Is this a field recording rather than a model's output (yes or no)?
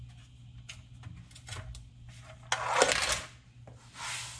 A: yes